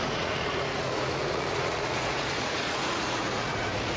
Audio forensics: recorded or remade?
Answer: remade